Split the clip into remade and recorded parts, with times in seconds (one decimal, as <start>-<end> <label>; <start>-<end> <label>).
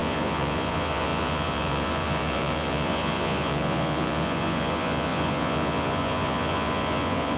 0.0-7.4 remade